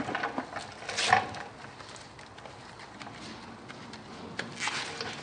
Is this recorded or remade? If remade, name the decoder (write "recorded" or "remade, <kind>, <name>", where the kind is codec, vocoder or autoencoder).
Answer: recorded